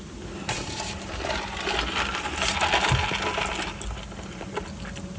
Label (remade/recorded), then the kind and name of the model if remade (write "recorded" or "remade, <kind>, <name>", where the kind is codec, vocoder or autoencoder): recorded